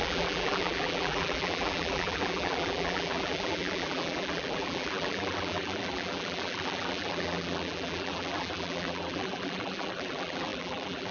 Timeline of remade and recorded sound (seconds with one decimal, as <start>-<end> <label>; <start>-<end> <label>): 0.0-11.1 remade